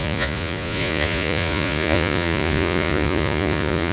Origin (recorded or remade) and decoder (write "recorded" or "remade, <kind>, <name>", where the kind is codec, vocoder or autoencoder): remade, vocoder, Vocos